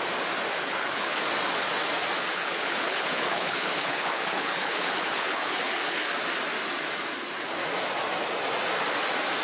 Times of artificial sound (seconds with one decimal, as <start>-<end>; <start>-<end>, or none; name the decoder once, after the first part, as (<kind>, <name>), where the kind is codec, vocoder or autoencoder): 0.5-1.2 (codec, HILCodec); 2.3-6.1